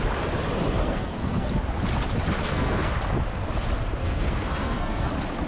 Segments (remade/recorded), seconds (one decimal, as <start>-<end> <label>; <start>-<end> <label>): 0.0-0.8 recorded; 0.8-1.5 remade; 1.5-2.4 recorded; 2.4-2.9 remade; 2.9-4.0 recorded; 4.0-5.1 remade; 5.1-5.5 recorded